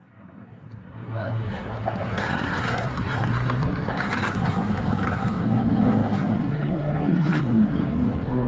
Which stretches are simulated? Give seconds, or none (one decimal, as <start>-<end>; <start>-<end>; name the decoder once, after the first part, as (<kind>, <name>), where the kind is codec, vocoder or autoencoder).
0.0-8.5 (codec, SNAC)